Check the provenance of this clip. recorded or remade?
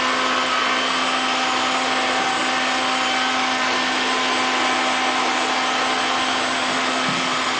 recorded